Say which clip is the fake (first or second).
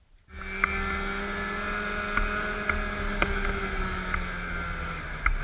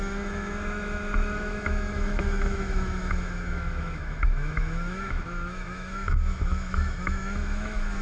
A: second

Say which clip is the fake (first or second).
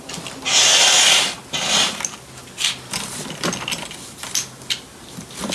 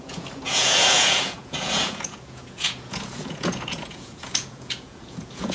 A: second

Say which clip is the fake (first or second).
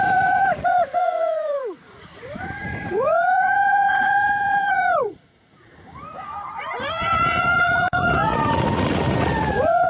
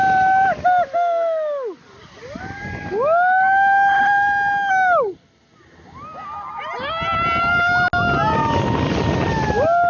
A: first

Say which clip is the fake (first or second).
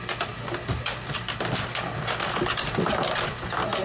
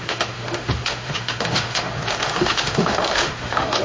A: second